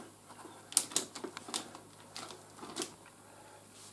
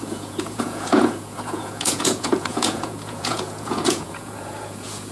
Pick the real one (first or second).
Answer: first